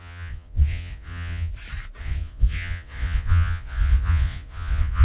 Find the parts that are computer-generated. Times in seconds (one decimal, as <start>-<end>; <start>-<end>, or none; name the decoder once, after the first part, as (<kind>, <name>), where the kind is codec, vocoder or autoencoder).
0.0-1.5 (vocoder, Vocos); 2.0-5.0